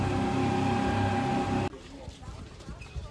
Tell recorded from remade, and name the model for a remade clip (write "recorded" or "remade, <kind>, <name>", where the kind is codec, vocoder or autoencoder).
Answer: recorded